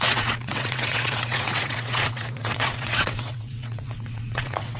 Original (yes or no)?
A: no